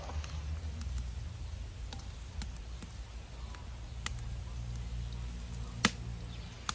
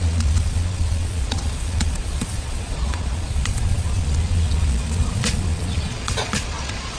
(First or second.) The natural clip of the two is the first